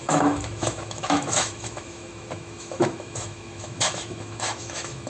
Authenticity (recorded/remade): remade